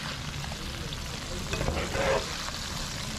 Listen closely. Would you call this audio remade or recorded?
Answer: recorded